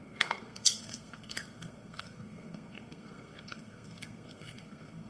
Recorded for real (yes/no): no